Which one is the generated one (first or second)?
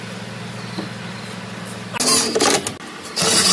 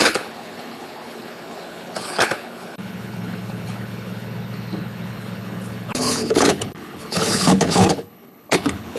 second